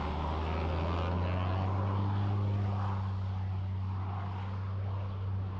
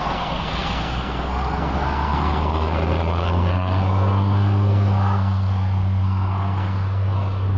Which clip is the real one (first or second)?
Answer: first